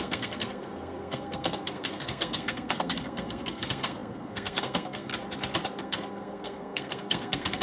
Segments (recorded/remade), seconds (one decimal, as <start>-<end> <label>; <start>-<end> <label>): 0.0-5.1 remade; 5.1-5.8 recorded; 5.8-7.6 remade